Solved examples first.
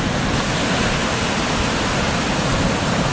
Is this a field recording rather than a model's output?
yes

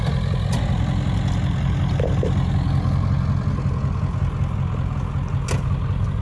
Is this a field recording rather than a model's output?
yes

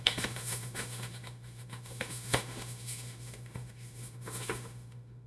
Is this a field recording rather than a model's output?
no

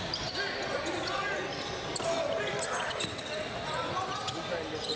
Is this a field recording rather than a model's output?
yes